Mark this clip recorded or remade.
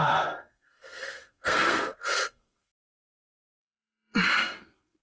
remade